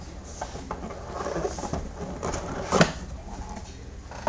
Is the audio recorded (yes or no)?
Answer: yes